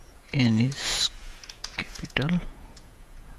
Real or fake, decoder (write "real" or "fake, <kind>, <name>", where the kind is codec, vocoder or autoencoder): fake, vocoder, Vocos